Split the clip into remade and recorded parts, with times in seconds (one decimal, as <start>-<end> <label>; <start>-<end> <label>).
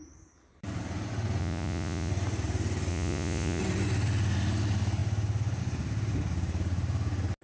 0.0-1.4 recorded; 1.4-2.1 remade; 2.1-2.9 recorded; 2.9-3.6 remade; 3.6-7.4 recorded